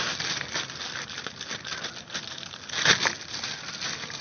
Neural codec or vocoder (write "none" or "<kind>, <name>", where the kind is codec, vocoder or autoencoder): none